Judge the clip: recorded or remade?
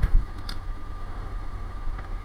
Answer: remade